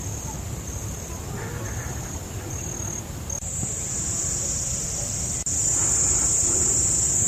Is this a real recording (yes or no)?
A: yes